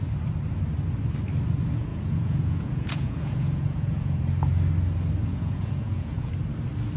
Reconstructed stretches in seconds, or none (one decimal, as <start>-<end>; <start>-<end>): 1.9-4.2; 5.3-6.3